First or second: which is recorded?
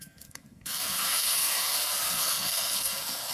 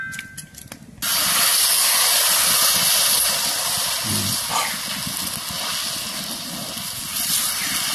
second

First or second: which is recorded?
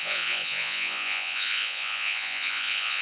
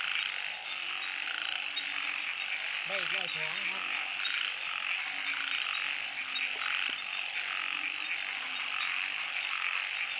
second